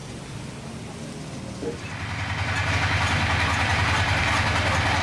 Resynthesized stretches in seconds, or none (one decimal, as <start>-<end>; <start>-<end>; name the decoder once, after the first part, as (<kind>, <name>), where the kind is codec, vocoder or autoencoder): 3.7-4.3 (vocoder, BigVGAN v2)